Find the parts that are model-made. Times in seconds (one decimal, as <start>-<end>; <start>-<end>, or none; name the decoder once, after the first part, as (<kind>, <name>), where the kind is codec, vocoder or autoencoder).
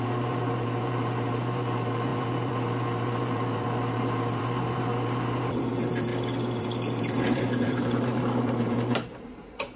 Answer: 0.0-6.1 (vocoder, BigVGAN v2); 6.6-9.8